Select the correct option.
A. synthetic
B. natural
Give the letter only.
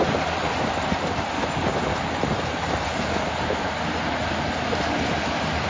B